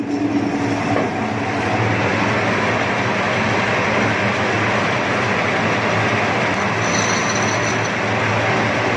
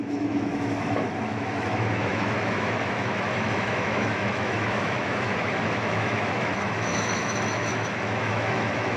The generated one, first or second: second